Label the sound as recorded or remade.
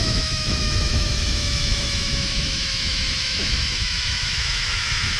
remade